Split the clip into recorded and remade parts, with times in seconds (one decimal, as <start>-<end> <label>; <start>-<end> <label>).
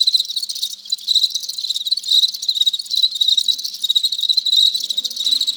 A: 0.0-5.6 recorded